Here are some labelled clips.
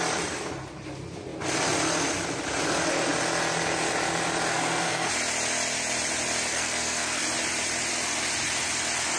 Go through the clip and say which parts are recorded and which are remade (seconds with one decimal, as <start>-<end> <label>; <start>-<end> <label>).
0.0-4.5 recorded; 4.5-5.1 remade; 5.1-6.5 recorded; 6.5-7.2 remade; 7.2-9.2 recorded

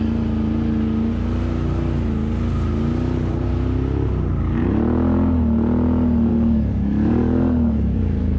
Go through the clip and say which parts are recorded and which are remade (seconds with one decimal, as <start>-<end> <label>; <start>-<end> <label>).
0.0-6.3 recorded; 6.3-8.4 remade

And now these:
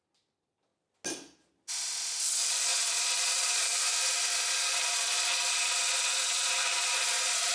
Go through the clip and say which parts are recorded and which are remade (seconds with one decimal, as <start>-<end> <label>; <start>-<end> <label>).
0.0-7.5 recorded

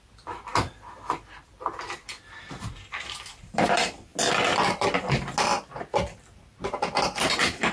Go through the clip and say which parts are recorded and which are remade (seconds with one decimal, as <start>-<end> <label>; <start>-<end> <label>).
0.0-4.1 remade; 4.1-7.3 recorded; 7.3-7.7 remade